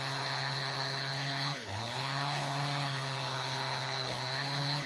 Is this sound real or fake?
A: fake